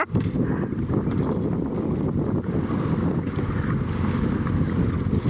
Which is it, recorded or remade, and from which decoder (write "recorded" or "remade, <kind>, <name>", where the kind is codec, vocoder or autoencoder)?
recorded